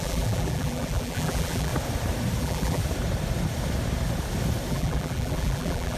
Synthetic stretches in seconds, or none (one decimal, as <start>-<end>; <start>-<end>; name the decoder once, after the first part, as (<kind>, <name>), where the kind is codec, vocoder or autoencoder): 0.0-1.7 (vocoder, BigVGAN v2); 2.4-2.8; 4.7-6.0